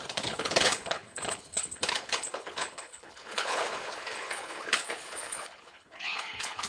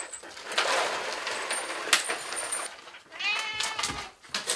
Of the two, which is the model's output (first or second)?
first